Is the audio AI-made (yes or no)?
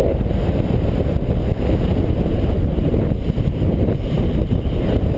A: yes